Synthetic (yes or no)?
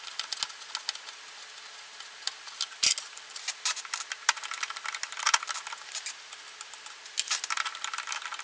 no